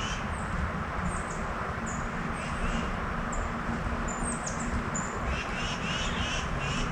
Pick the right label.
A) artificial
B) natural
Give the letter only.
B